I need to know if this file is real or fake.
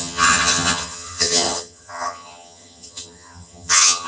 fake